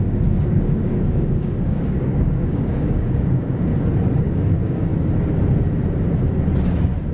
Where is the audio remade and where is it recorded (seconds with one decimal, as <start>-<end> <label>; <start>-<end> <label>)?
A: 0.0-3.7 remade; 3.7-4.2 recorded; 4.2-4.9 remade; 4.9-7.1 recorded